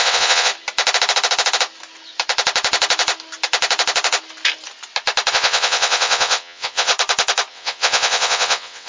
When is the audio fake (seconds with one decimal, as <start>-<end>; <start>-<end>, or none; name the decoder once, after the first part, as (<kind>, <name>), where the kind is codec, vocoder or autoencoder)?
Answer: 0.0-0.5 (vocoder, WaveNeXt); 5.3-6.9; 7.5-8.9